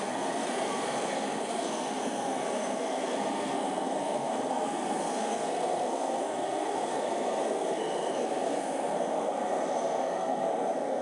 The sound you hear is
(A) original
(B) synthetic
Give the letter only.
B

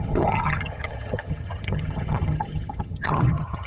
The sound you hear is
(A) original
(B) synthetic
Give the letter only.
B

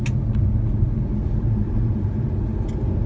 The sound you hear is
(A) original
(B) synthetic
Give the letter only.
A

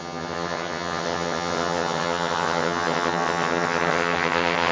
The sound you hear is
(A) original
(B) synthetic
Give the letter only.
B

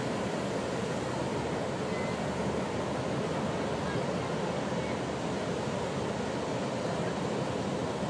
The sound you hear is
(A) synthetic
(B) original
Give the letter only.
B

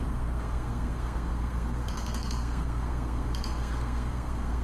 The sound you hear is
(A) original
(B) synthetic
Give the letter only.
B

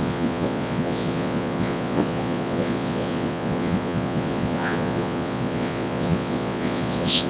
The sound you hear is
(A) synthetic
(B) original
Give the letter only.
A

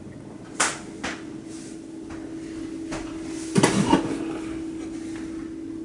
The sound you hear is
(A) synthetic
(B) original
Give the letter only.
B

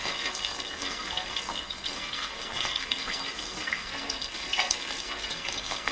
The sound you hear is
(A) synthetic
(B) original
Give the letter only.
A